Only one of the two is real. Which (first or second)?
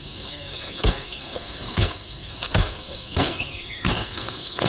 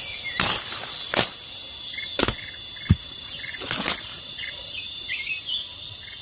second